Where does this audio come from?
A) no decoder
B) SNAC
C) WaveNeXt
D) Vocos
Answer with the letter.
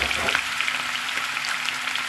A